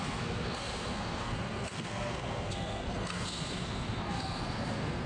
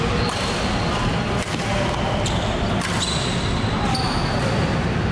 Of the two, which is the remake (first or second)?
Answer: first